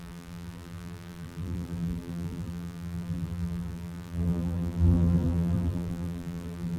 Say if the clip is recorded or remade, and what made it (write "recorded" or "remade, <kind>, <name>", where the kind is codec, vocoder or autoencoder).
remade, vocoder, BigVGAN v2